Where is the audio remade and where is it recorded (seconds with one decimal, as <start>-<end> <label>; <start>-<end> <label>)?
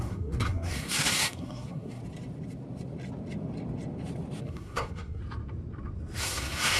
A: 0.0-2.0 remade; 2.0-4.4 recorded; 4.4-5.2 remade; 5.2-6.2 recorded; 6.2-6.8 remade